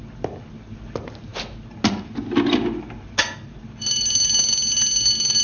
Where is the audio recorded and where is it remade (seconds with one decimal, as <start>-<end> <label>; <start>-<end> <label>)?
0.0-5.4 recorded